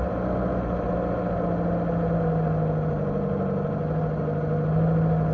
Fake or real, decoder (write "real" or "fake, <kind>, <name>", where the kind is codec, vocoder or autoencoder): real